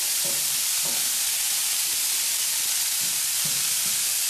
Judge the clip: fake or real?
fake